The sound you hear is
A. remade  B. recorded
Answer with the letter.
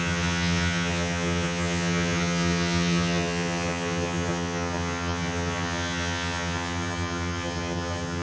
A